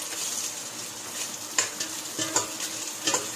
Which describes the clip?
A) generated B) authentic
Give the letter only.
B